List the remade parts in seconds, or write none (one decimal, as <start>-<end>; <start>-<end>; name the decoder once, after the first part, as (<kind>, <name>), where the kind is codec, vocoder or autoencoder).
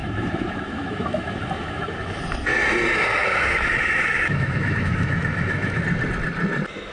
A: 0.0-2.2 (autoencoder, DAC-VAE); 3.2-5.8